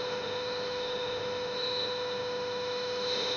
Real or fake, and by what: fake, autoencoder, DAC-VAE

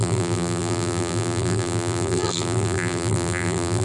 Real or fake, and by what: fake, vocoder, BigVGAN v2